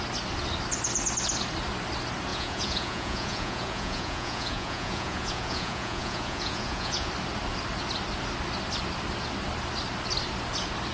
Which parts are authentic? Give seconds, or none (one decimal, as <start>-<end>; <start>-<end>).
0.0-2.3; 7.1-10.9